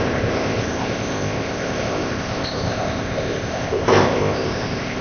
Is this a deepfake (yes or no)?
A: yes